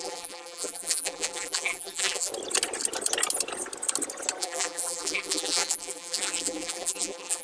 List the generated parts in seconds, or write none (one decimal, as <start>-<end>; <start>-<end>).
0.0-2.3; 4.4-7.4